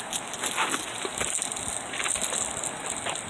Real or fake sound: real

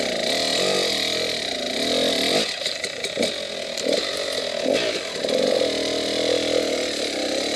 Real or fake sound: real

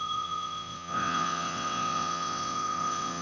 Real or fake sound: fake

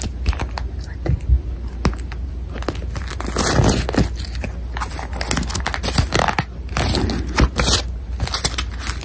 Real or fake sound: real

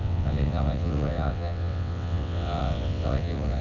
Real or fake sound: fake